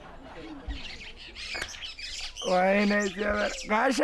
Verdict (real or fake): real